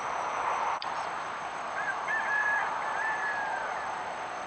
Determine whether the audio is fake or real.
fake